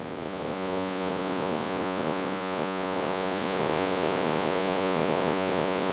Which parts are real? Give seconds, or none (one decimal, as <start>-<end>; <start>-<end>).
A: none